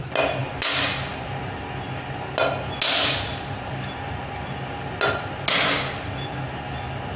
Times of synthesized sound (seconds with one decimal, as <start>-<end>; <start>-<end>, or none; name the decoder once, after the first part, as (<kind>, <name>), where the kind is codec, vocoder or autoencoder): none